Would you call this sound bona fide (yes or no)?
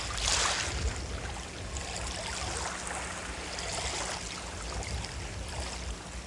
yes